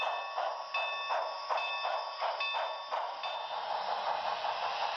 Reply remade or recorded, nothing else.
recorded